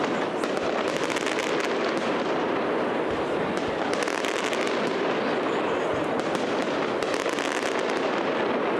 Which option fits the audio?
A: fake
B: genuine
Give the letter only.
B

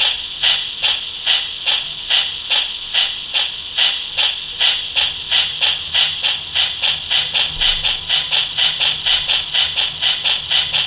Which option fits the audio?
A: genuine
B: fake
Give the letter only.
A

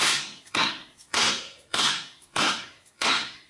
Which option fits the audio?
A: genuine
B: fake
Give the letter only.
B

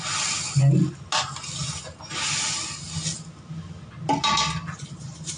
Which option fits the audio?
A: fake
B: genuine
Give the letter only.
B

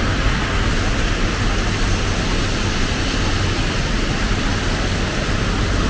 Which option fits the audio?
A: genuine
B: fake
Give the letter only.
A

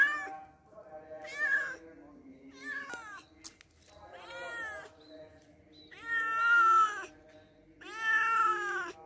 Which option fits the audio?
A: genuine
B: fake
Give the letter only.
A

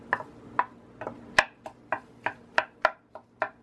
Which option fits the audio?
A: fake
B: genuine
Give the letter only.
B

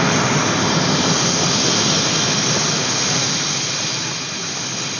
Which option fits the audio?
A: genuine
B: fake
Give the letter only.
A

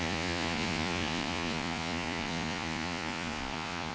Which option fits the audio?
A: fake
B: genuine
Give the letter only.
A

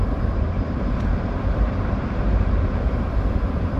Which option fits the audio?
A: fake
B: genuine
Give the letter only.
A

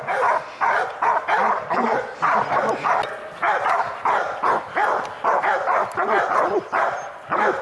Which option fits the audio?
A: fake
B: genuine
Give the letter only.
B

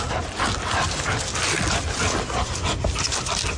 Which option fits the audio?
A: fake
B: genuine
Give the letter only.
B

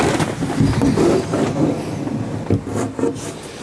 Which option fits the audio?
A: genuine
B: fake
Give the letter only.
A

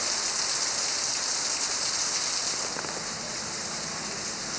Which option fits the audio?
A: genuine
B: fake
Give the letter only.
A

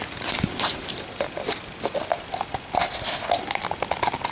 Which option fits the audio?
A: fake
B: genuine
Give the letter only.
B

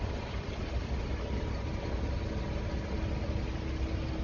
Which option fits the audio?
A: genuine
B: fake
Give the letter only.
A